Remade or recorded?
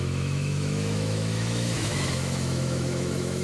remade